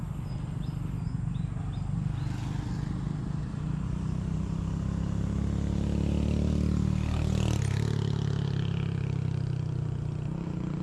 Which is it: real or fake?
real